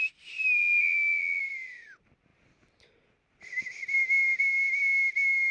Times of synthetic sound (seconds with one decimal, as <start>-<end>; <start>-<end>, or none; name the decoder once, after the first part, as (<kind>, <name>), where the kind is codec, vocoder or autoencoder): 0.6-1.4 (vocoder, BigVGAN v2)